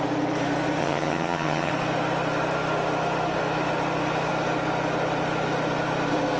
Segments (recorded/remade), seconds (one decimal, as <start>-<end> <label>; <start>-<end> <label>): 0.0-0.8 recorded; 0.8-1.7 remade; 1.7-6.4 recorded